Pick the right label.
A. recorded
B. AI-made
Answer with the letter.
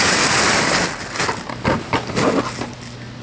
A